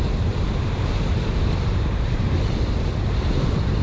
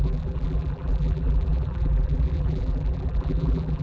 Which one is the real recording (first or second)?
first